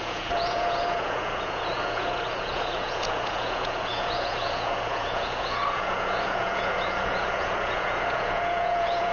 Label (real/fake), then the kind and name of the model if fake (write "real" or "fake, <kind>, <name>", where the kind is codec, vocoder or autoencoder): fake, vocoder, Vocos